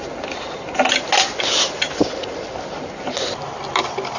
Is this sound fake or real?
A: real